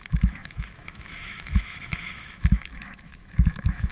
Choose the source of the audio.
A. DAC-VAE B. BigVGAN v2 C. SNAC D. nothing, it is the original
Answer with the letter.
A